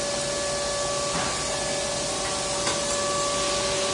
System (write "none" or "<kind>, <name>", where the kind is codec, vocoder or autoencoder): none